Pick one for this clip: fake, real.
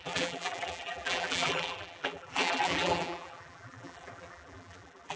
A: fake